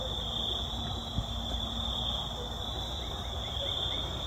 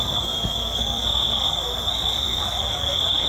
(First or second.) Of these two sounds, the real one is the first